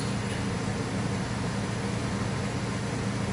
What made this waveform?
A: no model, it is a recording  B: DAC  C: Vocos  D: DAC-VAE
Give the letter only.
A